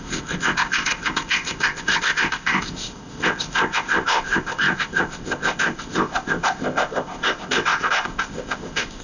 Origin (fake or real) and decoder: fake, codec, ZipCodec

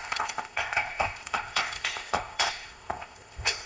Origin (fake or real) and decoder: fake, codec, ZipCodec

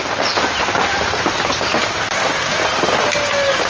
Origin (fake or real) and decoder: real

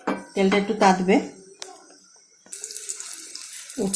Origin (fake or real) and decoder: real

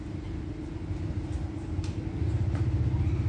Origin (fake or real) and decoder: real